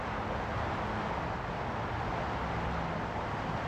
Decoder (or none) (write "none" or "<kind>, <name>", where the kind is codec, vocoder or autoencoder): none